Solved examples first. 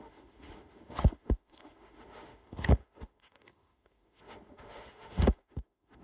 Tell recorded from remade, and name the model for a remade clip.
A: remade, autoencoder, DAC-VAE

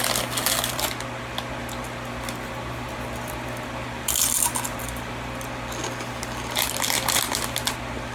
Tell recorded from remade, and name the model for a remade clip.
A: recorded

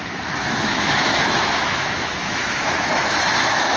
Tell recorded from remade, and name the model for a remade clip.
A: remade, autoencoder, DAC-VAE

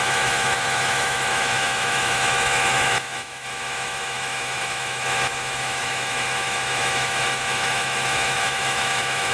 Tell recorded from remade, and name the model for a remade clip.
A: remade, autoencoder, DAC-VAE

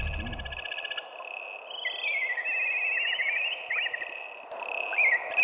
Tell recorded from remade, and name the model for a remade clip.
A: recorded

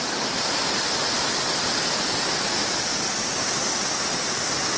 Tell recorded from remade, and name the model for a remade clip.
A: recorded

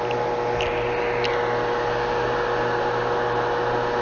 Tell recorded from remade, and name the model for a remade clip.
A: recorded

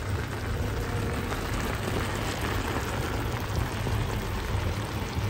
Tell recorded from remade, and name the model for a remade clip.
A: recorded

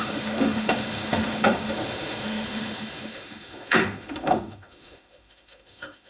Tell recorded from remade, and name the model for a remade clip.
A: remade, autoencoder, DAC-VAE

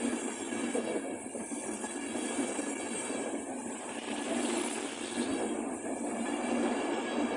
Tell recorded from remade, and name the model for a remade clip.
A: recorded